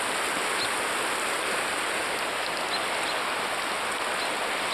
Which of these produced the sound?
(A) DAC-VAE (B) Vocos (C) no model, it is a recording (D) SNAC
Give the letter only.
C